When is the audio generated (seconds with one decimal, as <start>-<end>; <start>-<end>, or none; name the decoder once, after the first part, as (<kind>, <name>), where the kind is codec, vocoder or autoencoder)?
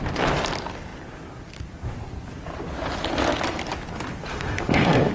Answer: 4.3-5.1 (autoencoder, DAC-VAE)